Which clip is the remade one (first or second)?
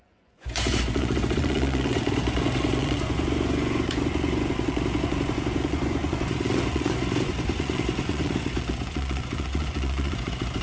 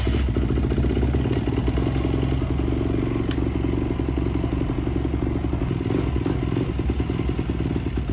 first